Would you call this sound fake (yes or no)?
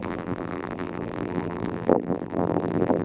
yes